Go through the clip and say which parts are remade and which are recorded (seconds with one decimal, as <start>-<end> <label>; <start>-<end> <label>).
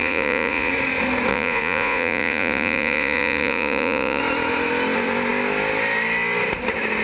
0.0-0.7 remade; 0.7-1.3 recorded; 1.3-4.2 remade; 4.2-7.0 recorded